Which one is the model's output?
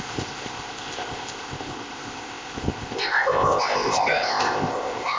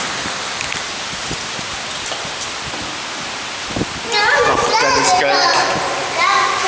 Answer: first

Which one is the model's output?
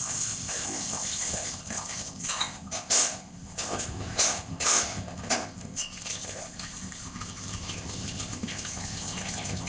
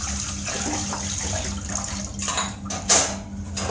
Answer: first